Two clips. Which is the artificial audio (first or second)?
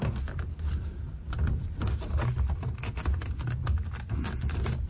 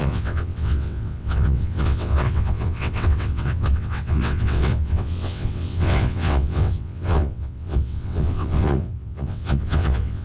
second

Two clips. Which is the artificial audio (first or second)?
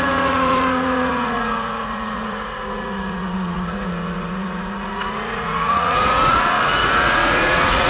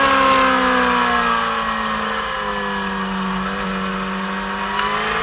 first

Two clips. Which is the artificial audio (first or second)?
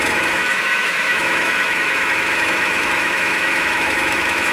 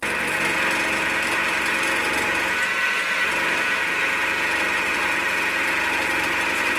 first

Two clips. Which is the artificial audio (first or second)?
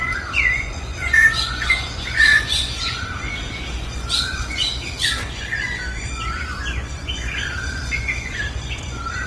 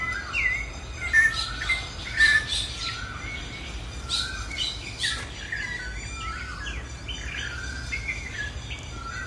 first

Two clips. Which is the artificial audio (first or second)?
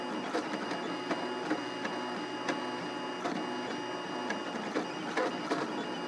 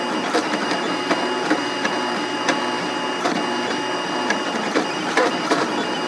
second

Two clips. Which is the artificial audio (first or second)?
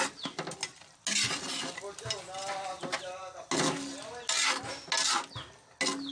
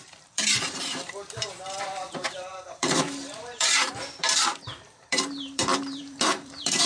second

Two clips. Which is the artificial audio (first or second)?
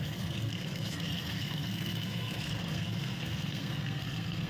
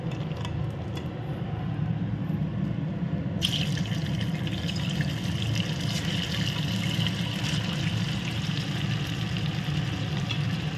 first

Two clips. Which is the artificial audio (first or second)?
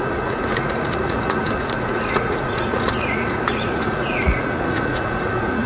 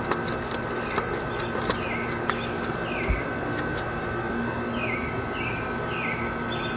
first